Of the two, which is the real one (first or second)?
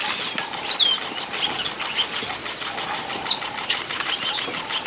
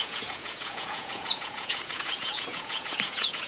first